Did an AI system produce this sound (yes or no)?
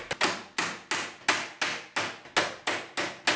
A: no